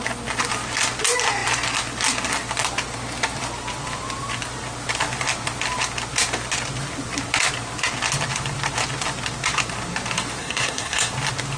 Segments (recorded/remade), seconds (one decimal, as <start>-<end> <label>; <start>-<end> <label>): 0.0-10.4 recorded; 10.4-11.1 remade; 11.1-11.6 recorded